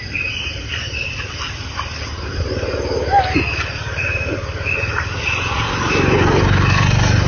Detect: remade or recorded recorded